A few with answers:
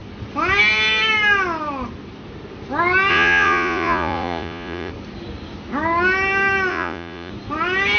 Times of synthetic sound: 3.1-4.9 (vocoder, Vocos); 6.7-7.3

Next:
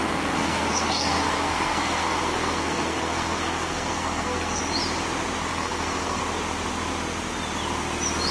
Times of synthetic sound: 0.0-4.6 (codec, SNAC); 5.5-6.2